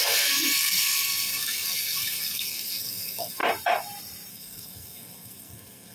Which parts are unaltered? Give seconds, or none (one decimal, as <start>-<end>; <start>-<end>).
3.4-4.3